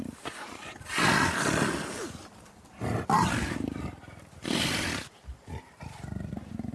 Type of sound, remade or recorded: remade